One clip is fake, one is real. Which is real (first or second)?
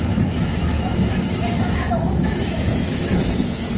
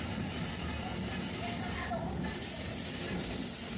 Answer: second